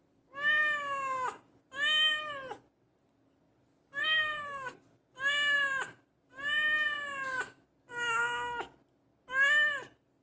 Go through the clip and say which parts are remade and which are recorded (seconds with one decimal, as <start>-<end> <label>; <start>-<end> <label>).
0.0-4.0 recorded; 4.0-4.8 remade; 4.8-10.2 recorded